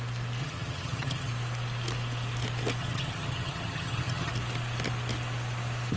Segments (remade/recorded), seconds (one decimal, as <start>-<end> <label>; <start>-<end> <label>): 0.0-0.4 recorded; 0.4-1.3 remade; 1.3-2.8 recorded; 2.8-4.3 remade; 4.3-6.0 recorded